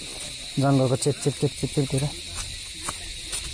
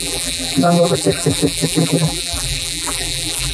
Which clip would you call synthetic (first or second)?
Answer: second